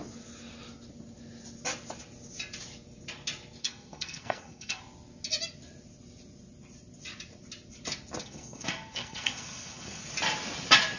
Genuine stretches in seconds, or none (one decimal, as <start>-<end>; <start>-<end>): 0.0-3.6; 4.8-8.2; 10.0-11.0